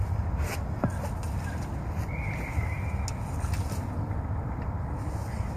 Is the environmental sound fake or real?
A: real